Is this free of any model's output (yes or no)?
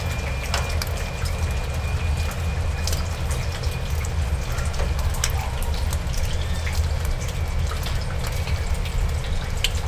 yes